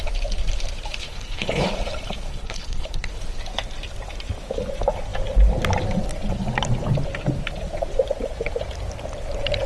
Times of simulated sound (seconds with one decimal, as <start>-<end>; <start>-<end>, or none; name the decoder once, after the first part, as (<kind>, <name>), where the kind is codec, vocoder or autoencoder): 1.0-1.7 (codec, HILCodec); 2.3-3.1